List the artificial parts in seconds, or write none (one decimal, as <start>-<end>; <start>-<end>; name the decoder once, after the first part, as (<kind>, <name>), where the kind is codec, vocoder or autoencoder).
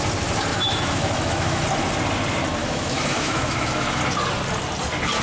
0.5-1.6 (autoencoder, DAC-VAE); 2.6-4.0